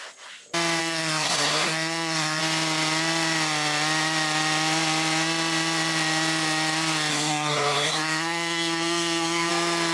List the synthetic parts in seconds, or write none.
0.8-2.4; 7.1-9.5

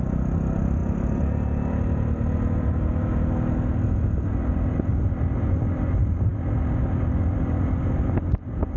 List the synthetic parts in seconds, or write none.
none

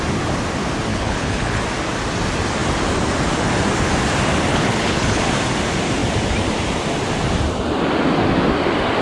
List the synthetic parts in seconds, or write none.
0.9-1.6; 4.5-5.2